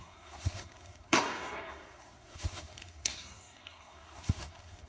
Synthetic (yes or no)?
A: yes